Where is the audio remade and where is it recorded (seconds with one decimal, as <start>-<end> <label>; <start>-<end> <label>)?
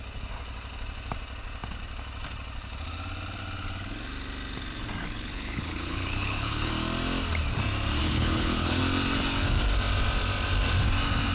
0.0-5.0 recorded; 5.0-6.7 remade; 6.7-8.0 recorded; 8.0-8.8 remade; 8.8-11.3 recorded